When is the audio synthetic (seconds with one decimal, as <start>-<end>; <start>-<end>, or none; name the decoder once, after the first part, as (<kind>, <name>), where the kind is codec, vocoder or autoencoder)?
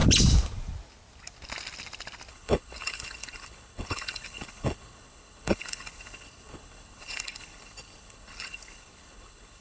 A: 2.3-9.6 (codec, HILCodec)